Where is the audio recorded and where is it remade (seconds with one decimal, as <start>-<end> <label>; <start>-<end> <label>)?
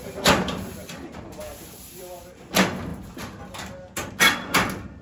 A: 0.0-0.8 recorded; 0.8-1.4 remade; 1.4-5.0 recorded